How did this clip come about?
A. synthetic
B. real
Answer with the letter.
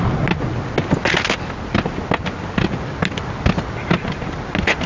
B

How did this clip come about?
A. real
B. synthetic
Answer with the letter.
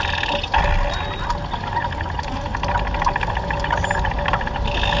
A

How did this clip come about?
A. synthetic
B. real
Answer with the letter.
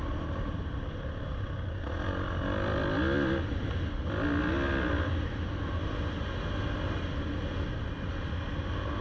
B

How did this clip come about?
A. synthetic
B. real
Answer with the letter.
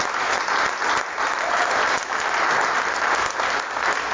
B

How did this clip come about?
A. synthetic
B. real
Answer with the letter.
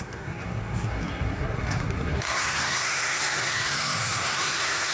A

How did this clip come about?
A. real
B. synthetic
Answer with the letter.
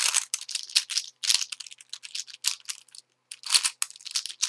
A